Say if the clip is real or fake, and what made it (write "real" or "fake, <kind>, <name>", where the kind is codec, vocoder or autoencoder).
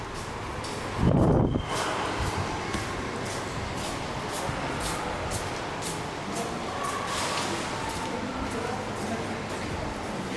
real